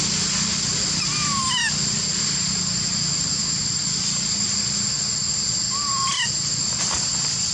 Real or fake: real